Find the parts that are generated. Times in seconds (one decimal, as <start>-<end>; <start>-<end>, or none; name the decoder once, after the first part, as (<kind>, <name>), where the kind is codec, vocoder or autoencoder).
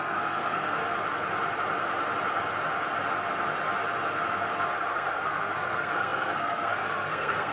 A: 0.0-0.8 (codec, SNAC); 4.9-7.5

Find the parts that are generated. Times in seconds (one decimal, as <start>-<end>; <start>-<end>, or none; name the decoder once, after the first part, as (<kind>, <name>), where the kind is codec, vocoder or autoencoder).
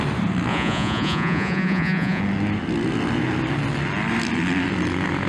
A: 0.5-2.2 (vocoder, Vocos)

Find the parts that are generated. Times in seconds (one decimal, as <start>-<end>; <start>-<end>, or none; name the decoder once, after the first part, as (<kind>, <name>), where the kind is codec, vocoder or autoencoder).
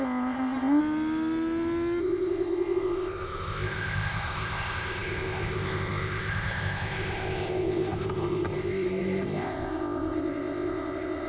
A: 0.0-0.8 (codec, ZipCodec); 2.0-11.3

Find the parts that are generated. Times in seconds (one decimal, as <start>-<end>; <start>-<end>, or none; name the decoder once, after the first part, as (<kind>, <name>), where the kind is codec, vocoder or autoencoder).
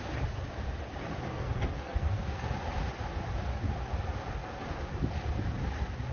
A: 1.3-2.5 (codec, SNAC)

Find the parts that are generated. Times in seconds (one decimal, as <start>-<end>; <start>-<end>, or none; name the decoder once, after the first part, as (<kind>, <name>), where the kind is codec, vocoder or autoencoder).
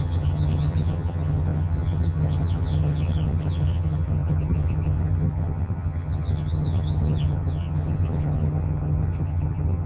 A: 0.0-9.9 (vocoder, HiFi-GAN)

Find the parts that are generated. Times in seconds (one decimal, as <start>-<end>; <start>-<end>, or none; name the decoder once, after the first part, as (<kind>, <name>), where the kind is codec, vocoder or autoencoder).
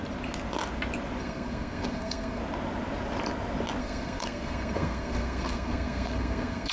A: 1.2-2.4 (codec, SNAC); 3.8-6.7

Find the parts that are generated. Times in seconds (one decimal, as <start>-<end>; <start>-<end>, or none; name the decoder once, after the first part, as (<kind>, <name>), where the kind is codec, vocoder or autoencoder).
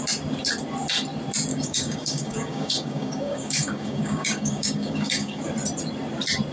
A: 1.5-5.4 (codec, DAC)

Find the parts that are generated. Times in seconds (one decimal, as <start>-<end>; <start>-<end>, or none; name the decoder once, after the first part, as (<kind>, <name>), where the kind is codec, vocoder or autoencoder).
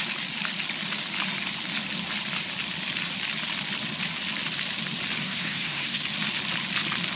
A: 5.2-6.0 (codec, SNAC)